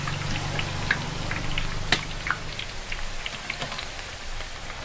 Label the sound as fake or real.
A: real